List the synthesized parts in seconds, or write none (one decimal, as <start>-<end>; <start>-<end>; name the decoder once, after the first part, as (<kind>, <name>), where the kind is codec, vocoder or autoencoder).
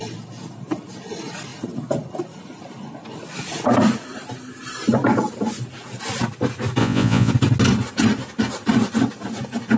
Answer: 6.8-7.3 (vocoder, Vocos)